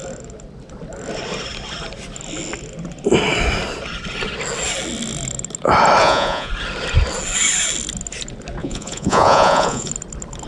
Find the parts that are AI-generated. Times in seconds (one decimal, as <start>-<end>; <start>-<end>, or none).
6.0-6.5; 8.6-9.9